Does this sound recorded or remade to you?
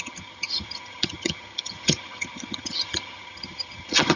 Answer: remade